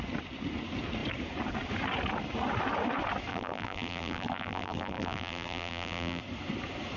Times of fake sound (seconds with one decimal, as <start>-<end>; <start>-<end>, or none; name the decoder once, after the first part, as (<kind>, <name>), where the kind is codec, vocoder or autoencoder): 3.3-6.2 (vocoder, BigVGAN v2)